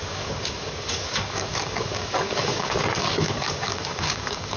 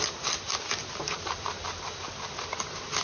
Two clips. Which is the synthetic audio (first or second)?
first